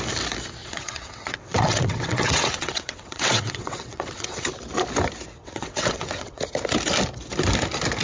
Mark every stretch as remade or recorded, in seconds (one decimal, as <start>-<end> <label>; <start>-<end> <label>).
0.0-0.6 recorded; 0.6-4.5 remade; 4.5-5.4 recorded; 5.4-6.4 remade; 6.4-8.0 recorded

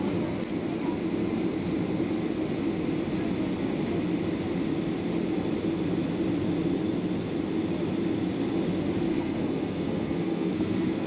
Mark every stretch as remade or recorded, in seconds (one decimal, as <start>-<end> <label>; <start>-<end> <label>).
0.0-9.1 recorded; 9.1-11.1 remade

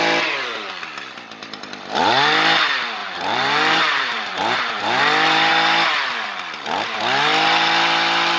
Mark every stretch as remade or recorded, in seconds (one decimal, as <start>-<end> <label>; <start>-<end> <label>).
0.0-3.0 recorded; 3.0-5.0 remade; 5.0-8.4 recorded

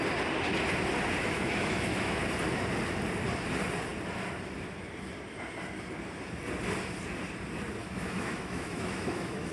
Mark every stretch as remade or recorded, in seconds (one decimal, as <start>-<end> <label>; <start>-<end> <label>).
0.0-1.2 recorded; 1.2-2.2 remade; 2.2-7.8 recorded; 7.8-9.5 remade